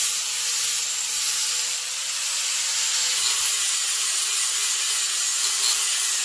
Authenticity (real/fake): real